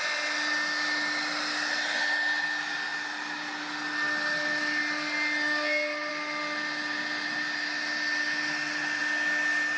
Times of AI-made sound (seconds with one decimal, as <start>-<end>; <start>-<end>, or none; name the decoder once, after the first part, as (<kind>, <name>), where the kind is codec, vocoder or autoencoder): none